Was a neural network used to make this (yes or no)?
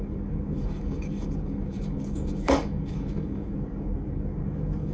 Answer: yes